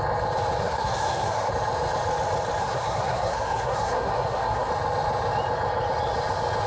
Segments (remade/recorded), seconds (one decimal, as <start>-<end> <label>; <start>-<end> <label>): 0.0-0.6 recorded; 0.6-1.5 remade; 1.5-2.6 recorded; 2.6-4.7 remade; 4.7-6.7 recorded